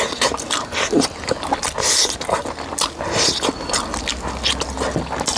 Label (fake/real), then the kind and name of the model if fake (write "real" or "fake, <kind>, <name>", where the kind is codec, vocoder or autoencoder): real